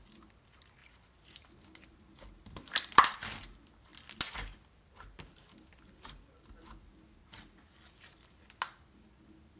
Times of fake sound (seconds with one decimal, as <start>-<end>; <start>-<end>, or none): none